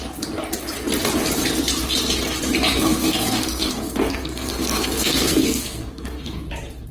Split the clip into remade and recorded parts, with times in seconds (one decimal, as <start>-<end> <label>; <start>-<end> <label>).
0.0-2.7 recorded; 2.7-6.5 remade; 6.5-6.9 recorded